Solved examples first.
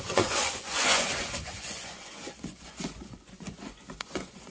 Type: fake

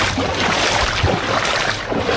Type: real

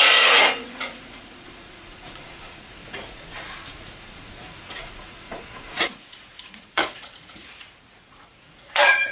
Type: fake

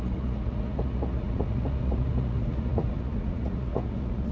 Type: fake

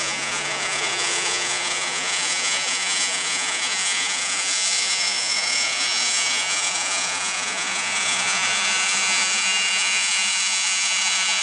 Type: fake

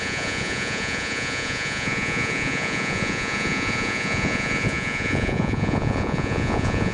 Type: fake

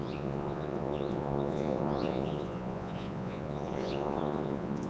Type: fake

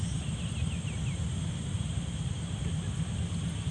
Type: real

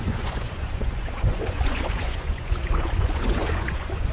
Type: fake